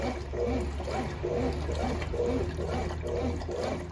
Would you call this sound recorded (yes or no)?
yes